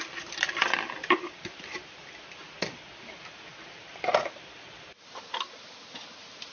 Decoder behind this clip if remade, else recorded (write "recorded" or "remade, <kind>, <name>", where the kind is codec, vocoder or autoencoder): recorded